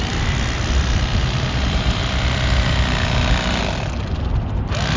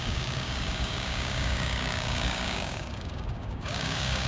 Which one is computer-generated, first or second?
second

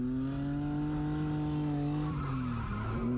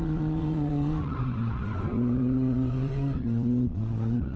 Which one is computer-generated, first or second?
second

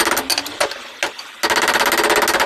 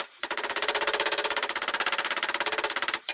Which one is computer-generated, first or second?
second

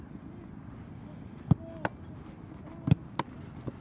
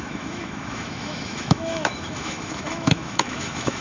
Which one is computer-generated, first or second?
second